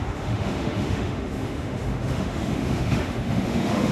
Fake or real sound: fake